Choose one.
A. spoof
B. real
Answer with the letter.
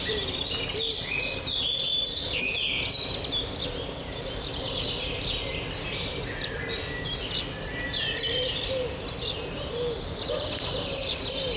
B